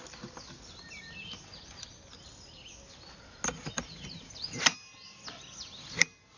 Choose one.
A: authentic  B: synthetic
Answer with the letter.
A